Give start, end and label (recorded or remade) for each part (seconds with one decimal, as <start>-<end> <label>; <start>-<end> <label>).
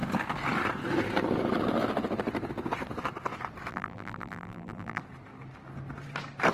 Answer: 0.0-3.7 recorded; 3.7-5.0 remade; 5.0-6.5 recorded